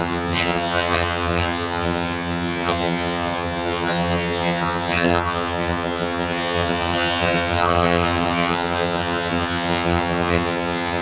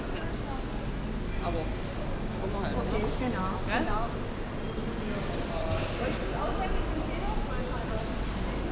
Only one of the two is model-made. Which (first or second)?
first